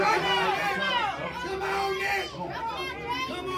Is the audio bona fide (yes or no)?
yes